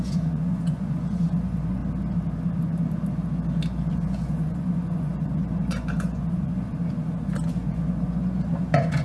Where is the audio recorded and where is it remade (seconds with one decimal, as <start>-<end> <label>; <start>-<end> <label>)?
0.0-1.8 remade; 1.8-3.8 recorded; 3.8-6.7 remade; 6.7-7.5 recorded; 7.5-9.0 remade